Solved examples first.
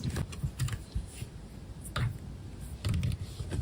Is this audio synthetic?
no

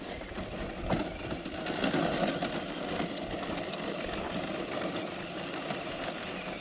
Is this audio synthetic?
no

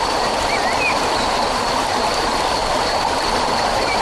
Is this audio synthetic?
no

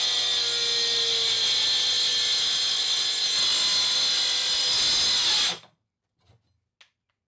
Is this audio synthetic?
no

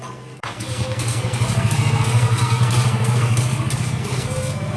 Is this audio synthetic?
yes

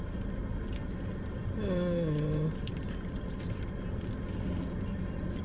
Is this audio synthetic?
no